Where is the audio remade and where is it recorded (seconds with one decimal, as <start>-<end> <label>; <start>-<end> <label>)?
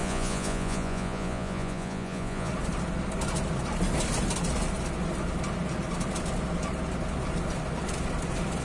0.0-2.5 remade; 2.5-8.6 recorded